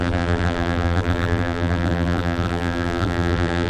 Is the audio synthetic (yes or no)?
yes